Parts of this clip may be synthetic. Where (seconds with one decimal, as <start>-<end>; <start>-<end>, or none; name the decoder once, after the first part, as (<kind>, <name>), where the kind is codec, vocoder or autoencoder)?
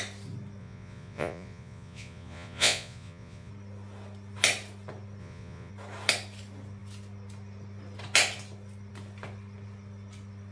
0.6-3.5 (vocoder, Vocos); 5.2-5.7